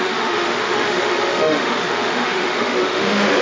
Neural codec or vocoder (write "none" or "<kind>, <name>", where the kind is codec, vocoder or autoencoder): autoencoder, DAC-VAE